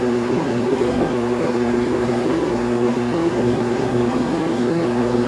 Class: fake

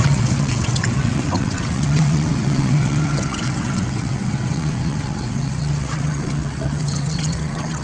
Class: fake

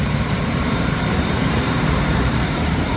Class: fake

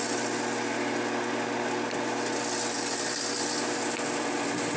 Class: real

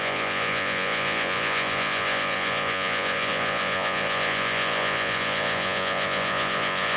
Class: fake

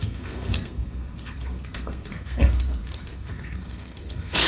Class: fake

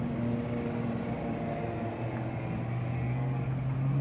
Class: real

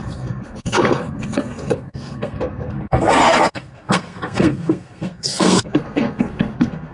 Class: fake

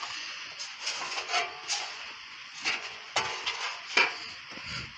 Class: fake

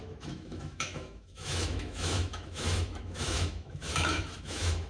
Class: fake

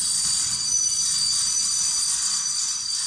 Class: fake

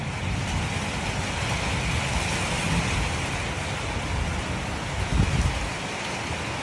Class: real